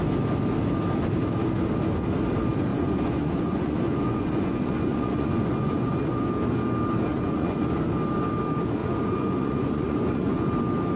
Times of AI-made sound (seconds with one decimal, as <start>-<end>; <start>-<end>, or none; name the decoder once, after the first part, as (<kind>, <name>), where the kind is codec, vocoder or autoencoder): 2.7-6.3 (vocoder, Vocos); 7.1-7.7; 8.8-10.5